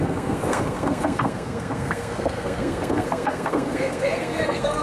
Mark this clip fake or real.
fake